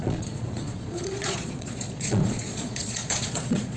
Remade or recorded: remade